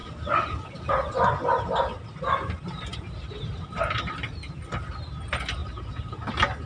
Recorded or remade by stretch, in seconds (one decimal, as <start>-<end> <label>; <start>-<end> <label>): 0.0-2.9 recorded; 2.9-3.8 remade; 3.8-5.6 recorded; 5.6-6.3 remade; 6.3-6.7 recorded